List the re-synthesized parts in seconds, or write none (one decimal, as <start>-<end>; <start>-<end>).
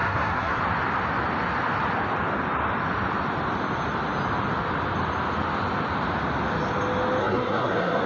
0.0-0.6; 7.2-8.1